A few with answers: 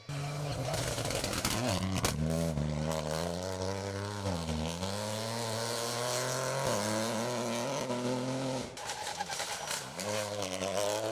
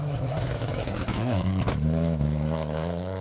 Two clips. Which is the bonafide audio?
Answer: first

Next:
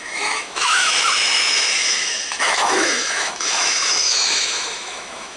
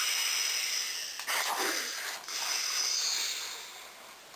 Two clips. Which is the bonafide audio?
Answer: second